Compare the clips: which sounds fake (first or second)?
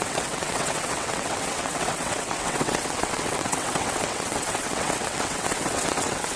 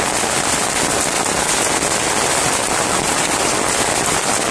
first